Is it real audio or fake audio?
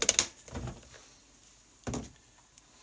real